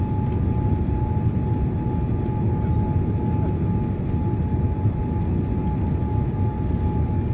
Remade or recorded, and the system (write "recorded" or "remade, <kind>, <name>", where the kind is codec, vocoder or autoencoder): recorded